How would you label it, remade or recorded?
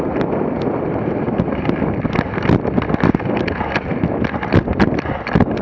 recorded